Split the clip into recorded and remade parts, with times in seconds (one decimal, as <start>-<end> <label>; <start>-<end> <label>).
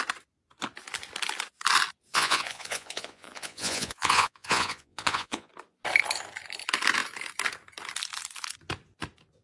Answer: 0.0-2.1 recorded; 2.1-5.5 remade; 5.5-9.4 recorded